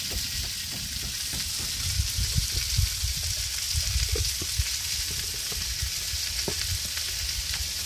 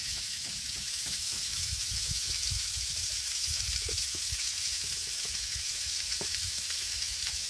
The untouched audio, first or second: first